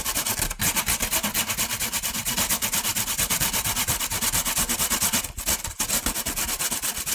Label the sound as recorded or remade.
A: recorded